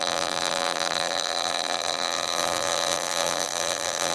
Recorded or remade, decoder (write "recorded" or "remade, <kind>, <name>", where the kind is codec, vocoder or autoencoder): remade, vocoder, BigVGAN v2